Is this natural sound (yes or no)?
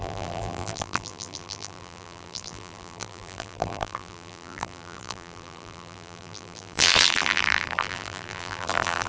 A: no